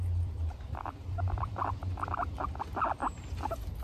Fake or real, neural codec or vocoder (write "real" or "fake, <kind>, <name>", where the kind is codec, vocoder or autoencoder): fake, vocoder, BigVGAN v2